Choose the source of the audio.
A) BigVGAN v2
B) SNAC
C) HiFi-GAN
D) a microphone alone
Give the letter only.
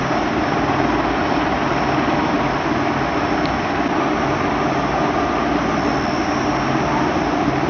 D